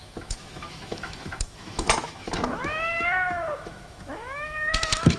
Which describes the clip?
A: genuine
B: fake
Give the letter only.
B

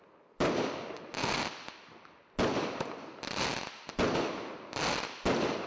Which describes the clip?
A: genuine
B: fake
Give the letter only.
A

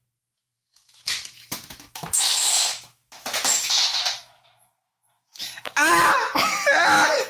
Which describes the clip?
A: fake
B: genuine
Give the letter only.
A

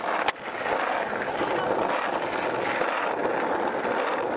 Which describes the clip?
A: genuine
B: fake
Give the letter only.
A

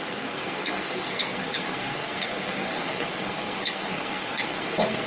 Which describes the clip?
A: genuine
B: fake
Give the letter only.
B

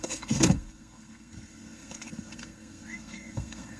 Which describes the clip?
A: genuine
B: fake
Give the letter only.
B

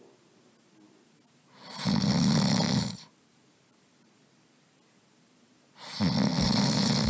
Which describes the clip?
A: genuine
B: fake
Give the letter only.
A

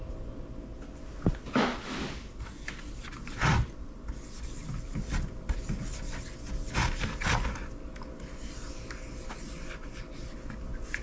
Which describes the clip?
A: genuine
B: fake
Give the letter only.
A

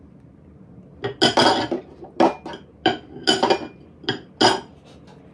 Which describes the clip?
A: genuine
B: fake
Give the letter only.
A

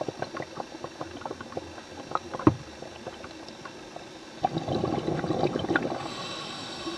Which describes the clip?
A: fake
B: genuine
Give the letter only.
B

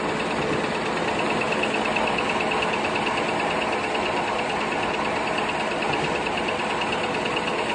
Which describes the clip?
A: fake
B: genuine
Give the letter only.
B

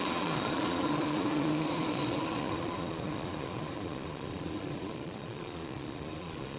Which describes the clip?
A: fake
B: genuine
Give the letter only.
A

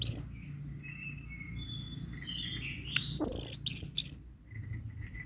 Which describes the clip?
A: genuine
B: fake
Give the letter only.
A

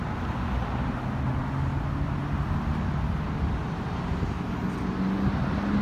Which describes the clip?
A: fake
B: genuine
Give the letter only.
B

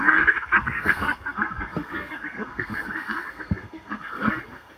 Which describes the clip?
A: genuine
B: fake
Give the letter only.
B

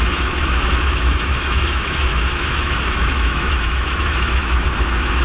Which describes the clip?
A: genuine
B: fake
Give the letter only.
B